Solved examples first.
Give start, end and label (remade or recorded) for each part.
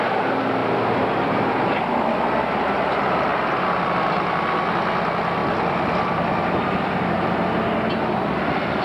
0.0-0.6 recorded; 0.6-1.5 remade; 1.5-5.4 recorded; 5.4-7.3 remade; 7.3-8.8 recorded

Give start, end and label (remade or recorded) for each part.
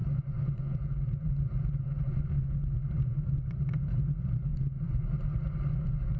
0.0-3.7 remade; 3.7-4.5 recorded; 4.5-5.0 remade; 5.0-6.2 recorded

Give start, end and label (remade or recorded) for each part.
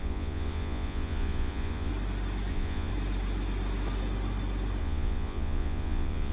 0.0-1.9 remade; 1.9-2.5 recorded; 2.5-2.9 remade; 2.9-4.8 recorded; 4.8-6.3 remade